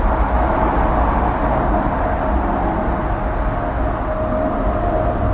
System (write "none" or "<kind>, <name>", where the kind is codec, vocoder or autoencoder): none